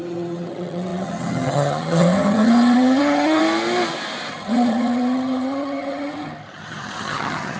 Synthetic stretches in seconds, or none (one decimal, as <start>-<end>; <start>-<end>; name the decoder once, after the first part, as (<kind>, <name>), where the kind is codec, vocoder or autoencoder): 0.0-3.4 (vocoder, HiFi-GAN); 4.3-7.6